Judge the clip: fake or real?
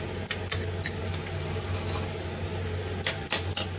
real